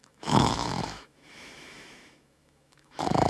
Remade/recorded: remade